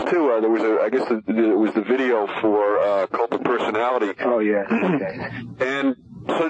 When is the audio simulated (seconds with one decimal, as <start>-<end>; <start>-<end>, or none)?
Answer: none